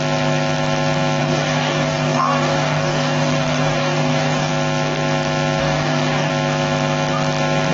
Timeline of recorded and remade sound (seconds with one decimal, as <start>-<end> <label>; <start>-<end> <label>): 0.0-1.2 recorded; 1.2-4.5 remade; 4.5-5.6 recorded; 5.6-6.3 remade; 6.3-7.7 recorded